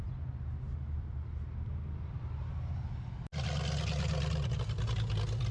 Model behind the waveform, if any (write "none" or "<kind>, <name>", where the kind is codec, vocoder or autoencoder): none